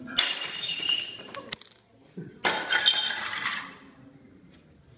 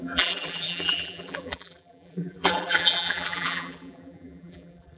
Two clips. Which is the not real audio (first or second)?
second